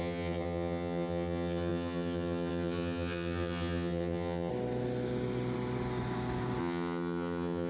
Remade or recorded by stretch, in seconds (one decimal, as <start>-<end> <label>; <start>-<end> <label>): 0.0-4.5 remade; 4.5-6.6 recorded; 6.6-7.7 remade

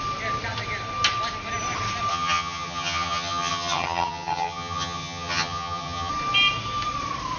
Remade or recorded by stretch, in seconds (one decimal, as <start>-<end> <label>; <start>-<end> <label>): 0.0-2.1 recorded; 2.1-6.1 remade; 6.1-7.4 recorded